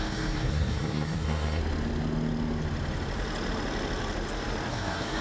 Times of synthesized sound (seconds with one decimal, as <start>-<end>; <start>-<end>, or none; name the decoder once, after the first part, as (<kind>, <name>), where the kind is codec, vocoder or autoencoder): 0.0-1.6 (codec, SNAC); 4.7-5.2